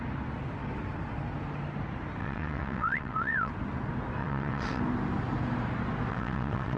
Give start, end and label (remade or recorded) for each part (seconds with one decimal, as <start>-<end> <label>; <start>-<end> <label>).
0.0-2.2 recorded; 2.2-3.5 remade; 3.5-4.2 recorded; 4.2-4.8 remade; 4.8-6.1 recorded; 6.1-6.8 remade

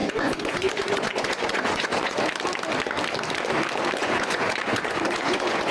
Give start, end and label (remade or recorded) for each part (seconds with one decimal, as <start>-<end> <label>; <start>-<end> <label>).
0.0-2.2 remade; 2.2-4.0 recorded; 4.0-5.7 remade

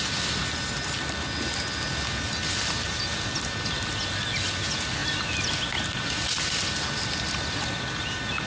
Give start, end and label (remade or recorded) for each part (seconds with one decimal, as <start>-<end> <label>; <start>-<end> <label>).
0.0-8.5 recorded

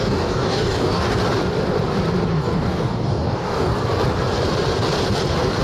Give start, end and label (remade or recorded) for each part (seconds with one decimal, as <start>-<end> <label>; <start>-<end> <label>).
0.0-1.2 remade; 1.2-2.3 recorded; 2.3-3.7 remade; 3.7-5.6 recorded

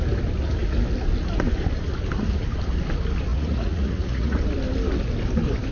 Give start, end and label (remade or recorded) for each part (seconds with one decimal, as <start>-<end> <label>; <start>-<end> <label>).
0.0-3.3 recorded; 3.3-4.4 remade; 4.4-5.7 recorded

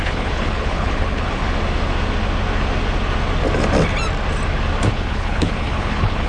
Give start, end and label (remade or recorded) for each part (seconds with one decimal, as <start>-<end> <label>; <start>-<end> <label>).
0.0-1.4 remade; 1.4-4.9 recorded; 4.9-6.3 remade

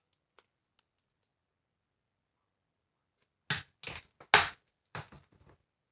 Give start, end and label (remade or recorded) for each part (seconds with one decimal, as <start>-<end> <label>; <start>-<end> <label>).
0.0-5.9 recorded